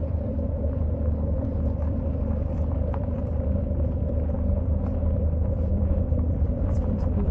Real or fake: fake